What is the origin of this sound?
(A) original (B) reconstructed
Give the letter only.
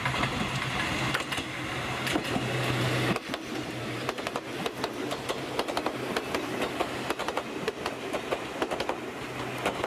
A